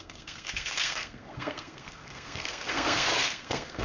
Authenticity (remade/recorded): remade